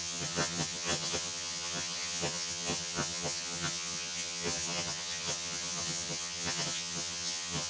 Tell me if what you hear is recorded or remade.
remade